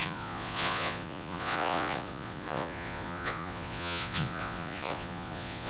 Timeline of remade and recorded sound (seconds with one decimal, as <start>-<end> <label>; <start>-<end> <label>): 0.0-5.7 remade